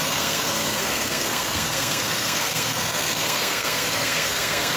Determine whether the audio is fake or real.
fake